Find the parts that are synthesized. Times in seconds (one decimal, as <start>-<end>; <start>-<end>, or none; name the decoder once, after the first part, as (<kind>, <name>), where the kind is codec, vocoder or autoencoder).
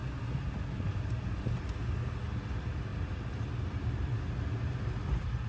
2.9-4.8 (vocoder, BigVGAN v2)